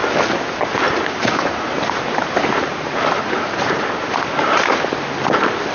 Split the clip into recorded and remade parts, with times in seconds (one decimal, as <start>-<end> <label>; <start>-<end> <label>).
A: 0.0-1.2 recorded; 1.2-4.6 remade; 4.6-5.7 recorded